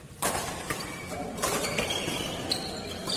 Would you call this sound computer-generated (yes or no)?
no